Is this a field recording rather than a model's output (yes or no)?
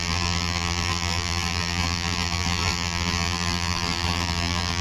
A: no